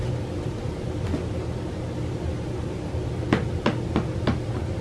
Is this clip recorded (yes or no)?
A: yes